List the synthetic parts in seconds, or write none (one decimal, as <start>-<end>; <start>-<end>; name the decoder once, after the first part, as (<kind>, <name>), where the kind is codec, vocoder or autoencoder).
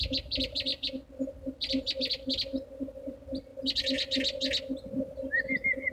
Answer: 0.0-3.5 (vocoder, BigVGAN v2)